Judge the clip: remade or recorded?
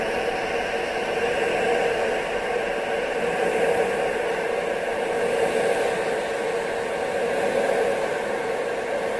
recorded